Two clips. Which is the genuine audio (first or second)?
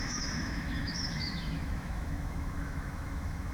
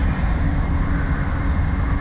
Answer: second